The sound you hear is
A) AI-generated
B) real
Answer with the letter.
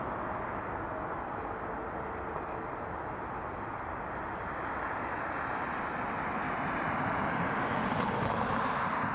B